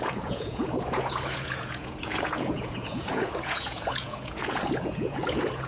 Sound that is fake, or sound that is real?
fake